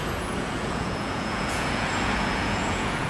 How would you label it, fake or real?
fake